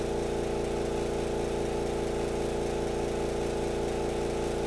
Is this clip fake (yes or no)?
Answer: no